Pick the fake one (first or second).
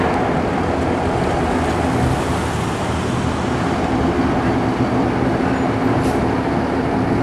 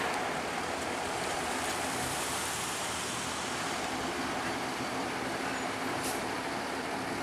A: second